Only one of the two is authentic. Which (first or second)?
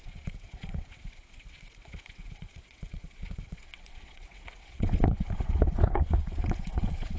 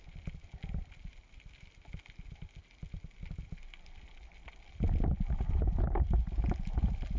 second